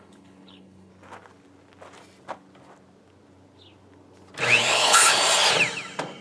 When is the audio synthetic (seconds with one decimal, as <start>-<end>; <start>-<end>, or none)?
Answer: 0.0-0.9; 4.6-5.2